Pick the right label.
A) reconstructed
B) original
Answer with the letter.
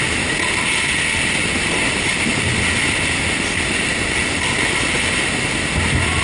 B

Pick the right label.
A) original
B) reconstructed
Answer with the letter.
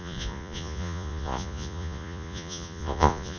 B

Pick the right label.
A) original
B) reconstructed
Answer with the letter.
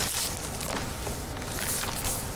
A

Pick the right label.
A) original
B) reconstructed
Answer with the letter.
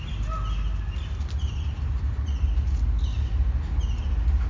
A